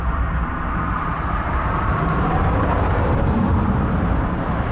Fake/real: fake